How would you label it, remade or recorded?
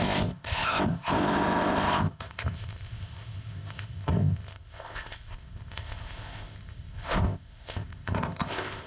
remade